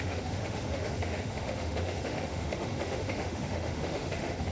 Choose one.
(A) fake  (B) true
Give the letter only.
A